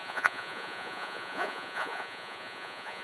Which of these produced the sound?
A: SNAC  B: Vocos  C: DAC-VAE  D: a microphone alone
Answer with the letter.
B